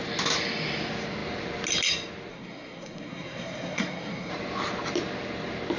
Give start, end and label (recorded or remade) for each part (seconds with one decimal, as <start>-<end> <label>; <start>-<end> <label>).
0.0-2.3 recorded; 2.3-4.3 remade; 4.3-5.8 recorded